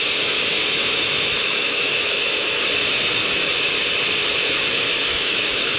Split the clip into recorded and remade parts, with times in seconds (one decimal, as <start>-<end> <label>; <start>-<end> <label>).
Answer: 0.0-0.6 recorded; 0.6-2.6 remade; 2.6-3.2 recorded; 3.2-3.7 remade; 3.7-4.2 recorded; 4.2-5.8 remade